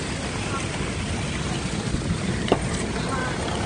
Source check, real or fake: real